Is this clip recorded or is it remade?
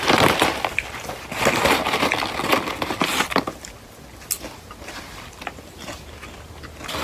recorded